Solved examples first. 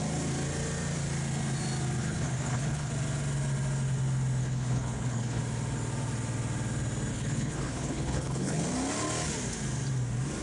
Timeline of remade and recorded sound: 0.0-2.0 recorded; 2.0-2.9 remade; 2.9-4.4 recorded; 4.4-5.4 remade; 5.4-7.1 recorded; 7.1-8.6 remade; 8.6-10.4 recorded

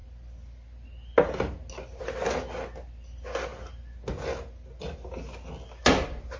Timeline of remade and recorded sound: 0.0-6.4 recorded

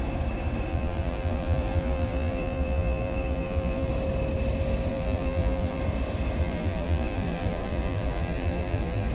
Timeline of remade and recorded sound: 0.0-0.7 recorded; 0.7-3.9 remade; 3.9-4.9 recorded; 4.9-5.8 remade; 5.8-6.4 recorded; 6.4-9.1 remade

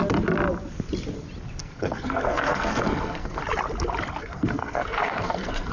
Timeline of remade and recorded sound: 0.0-1.6 recorded; 1.6-3.4 remade; 3.4-4.2 recorded; 4.2-5.7 remade